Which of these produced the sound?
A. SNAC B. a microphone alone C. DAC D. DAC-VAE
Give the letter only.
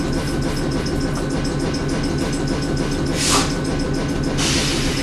B